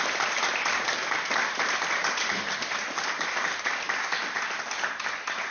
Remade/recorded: recorded